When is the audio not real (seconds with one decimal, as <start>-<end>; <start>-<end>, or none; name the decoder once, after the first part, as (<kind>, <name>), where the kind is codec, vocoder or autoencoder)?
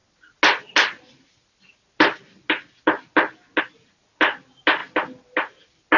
none